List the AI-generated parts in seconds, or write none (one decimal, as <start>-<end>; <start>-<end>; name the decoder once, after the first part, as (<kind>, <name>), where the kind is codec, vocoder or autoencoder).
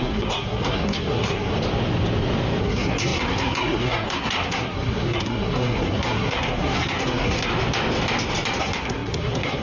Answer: 0.0-1.5 (codec, SNAC); 2.6-7.5; 8.6-9.6